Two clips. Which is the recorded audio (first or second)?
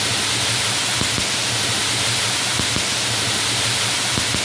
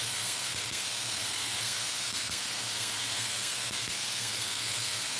first